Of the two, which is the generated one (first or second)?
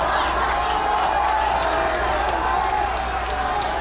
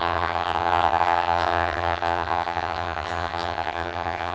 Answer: second